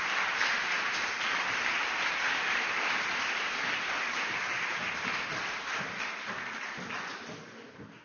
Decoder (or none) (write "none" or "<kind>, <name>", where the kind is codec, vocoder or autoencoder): none